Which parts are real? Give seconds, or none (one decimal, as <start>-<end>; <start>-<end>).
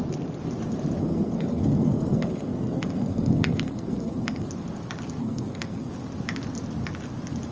0.0-1.0; 4.5-5.2; 5.9-7.5